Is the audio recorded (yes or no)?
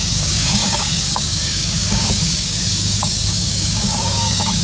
no